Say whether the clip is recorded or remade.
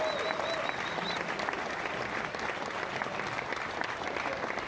recorded